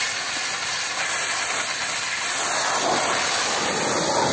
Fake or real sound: real